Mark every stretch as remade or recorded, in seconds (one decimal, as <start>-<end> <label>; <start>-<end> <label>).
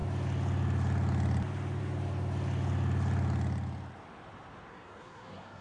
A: 0.0-4.7 recorded; 4.7-5.6 remade